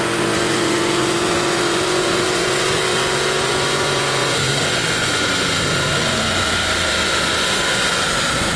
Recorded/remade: remade